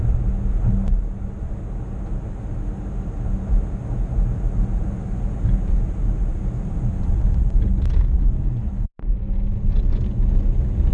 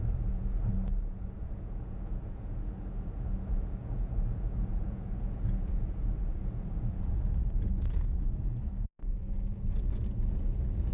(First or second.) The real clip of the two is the first